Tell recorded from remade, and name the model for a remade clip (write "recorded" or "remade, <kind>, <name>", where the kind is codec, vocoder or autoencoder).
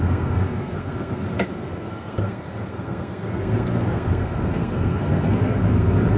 remade, codec, SNAC